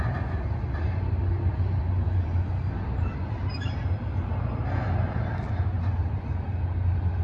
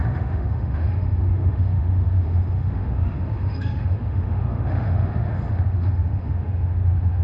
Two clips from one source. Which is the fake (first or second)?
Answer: second